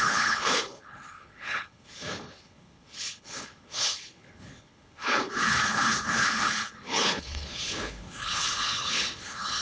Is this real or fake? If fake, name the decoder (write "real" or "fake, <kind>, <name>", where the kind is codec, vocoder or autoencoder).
fake, codec, HILCodec